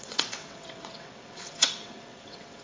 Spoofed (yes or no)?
yes